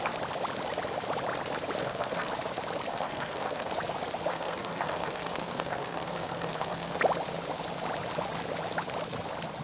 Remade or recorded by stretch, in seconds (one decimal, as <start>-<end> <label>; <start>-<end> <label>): 0.0-1.8 recorded; 1.8-2.3 remade; 2.3-2.9 recorded; 2.9-3.7 remade; 3.7-4.3 recorded; 4.3-7.0 remade; 7.0-9.6 recorded